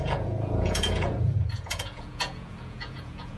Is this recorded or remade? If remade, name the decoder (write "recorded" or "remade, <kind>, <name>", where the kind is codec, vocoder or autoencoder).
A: remade, vocoder, Vocos